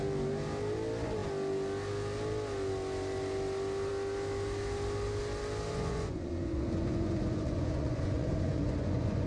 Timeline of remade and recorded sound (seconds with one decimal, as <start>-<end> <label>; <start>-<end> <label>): 0.0-5.7 recorded; 5.7-9.3 remade